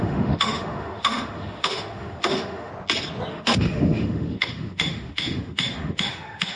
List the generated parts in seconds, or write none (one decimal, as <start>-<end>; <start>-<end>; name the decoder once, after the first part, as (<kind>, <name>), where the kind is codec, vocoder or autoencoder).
0.0-2.7 (autoencoder, DAC-VAE); 3.3-6.6